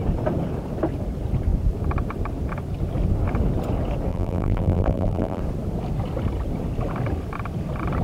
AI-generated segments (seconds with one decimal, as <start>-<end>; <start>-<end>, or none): 4.1-5.4